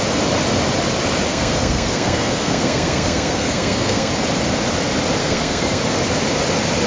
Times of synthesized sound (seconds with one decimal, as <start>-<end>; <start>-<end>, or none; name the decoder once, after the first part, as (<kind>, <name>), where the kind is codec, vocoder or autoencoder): 1.3-4.1 (codec, SNAC); 5.2-5.8